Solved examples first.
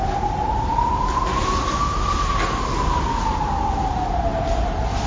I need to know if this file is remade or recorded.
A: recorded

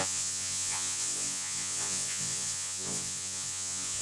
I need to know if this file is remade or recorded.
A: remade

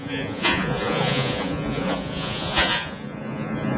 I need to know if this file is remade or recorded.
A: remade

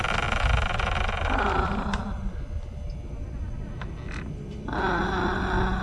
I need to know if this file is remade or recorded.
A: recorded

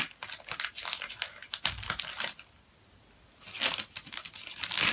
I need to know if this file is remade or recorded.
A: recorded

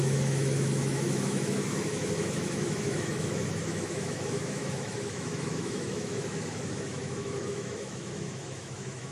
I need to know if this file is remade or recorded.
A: remade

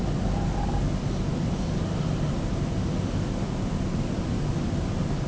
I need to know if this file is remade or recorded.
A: recorded